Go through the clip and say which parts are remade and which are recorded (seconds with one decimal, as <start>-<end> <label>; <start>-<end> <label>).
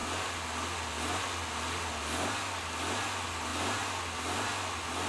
0.0-5.1 recorded